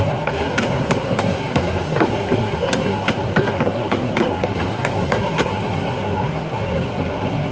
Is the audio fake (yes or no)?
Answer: yes